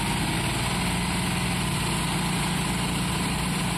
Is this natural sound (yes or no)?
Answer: yes